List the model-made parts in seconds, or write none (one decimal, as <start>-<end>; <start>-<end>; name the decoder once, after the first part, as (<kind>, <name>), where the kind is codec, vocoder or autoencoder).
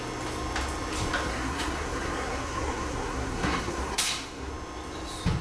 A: 1.3-4.5 (codec, SNAC)